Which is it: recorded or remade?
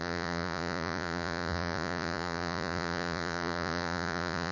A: remade